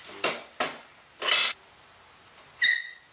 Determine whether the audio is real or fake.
real